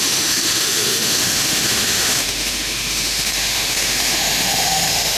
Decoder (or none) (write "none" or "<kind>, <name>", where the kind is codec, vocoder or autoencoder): autoencoder, DAC-VAE